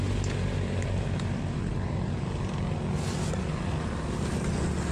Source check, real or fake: real